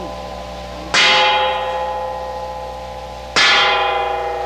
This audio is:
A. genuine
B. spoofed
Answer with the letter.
A